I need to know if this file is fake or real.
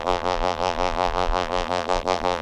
fake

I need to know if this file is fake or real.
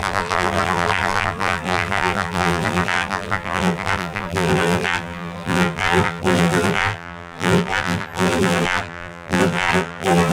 fake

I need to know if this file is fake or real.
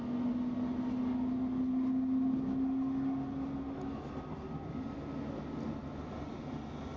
real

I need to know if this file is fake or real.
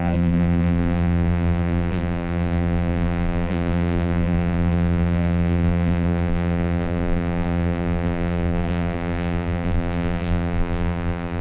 fake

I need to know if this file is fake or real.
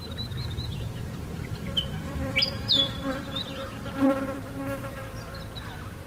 fake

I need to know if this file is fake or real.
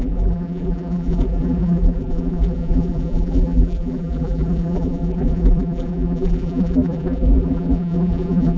fake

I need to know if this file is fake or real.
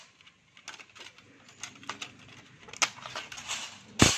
real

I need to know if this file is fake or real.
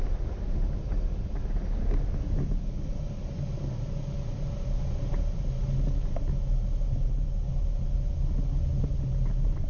real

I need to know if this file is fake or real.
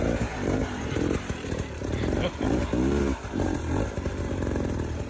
fake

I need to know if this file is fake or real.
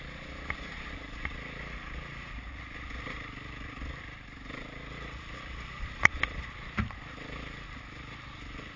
fake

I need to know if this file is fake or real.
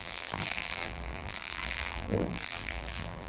fake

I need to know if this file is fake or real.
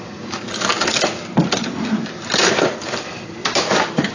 real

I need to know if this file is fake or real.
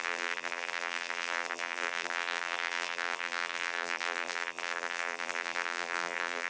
fake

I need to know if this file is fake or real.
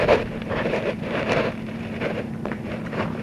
fake